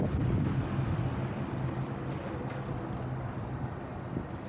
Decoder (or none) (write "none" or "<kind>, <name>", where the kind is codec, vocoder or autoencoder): none